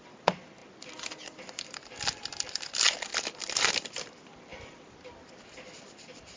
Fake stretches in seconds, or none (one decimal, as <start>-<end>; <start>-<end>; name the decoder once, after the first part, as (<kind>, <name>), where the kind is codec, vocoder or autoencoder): none